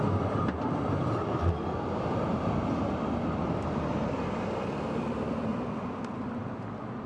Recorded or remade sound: recorded